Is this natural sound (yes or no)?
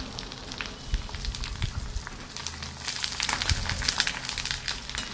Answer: yes